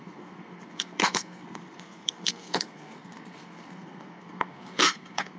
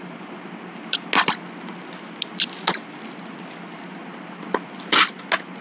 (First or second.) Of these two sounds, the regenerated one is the first